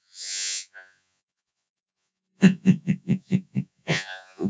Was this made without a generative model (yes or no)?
no